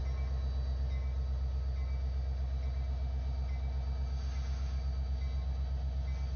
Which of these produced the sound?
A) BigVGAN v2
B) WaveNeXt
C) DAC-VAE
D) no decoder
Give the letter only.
D